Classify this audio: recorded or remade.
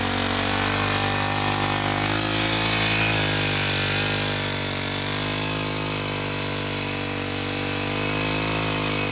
recorded